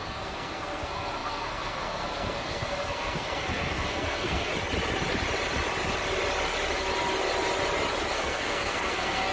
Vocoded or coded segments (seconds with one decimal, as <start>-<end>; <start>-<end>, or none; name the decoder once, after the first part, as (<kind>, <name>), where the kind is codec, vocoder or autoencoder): 0.0-4.5 (codec, SNAC); 8.1-9.3